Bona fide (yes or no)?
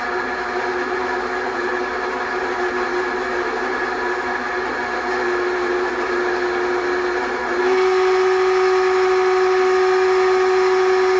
yes